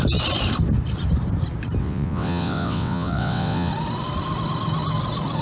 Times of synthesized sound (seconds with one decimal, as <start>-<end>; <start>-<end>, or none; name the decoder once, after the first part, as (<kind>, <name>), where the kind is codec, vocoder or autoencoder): 1.8-3.7 (vocoder, WaveNeXt)